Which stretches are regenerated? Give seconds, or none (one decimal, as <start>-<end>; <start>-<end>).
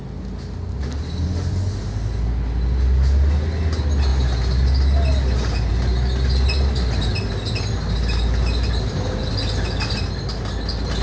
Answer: none